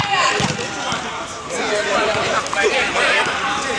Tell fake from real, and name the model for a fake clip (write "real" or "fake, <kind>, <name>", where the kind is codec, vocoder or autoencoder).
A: fake, vocoder, BigVGAN v2